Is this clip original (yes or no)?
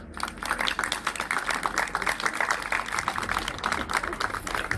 yes